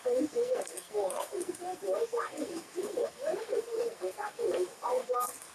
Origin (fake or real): fake